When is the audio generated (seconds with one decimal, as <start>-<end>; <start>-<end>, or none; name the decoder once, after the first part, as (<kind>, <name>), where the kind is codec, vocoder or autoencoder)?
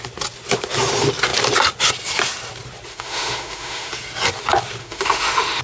2.9-3.9 (autoencoder, DAC-VAE); 4.8-5.6